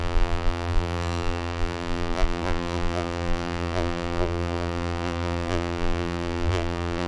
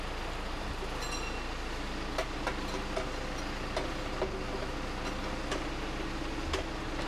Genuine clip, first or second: second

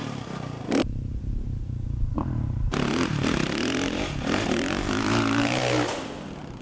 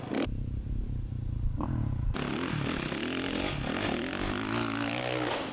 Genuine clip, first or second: second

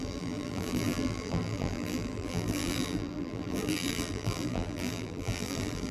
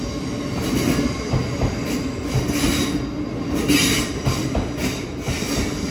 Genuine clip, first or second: second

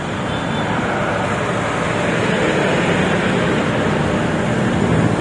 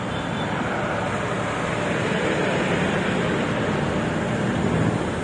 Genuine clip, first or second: first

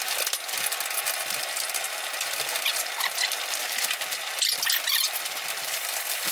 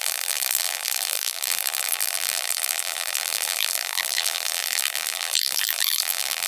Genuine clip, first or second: first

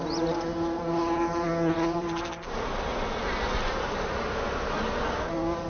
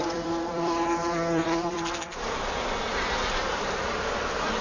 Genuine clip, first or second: first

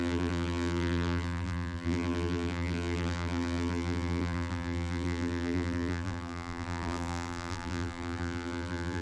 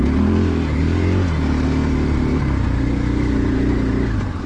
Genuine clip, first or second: second